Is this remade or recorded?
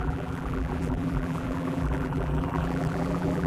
remade